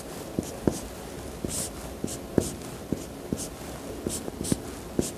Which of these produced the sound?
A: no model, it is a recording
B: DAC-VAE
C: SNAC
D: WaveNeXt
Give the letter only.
A